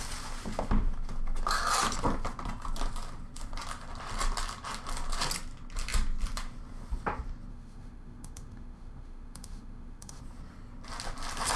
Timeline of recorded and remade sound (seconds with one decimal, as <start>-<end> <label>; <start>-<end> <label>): 0.0-7.5 recorded; 7.5-10.2 remade; 10.2-11.6 recorded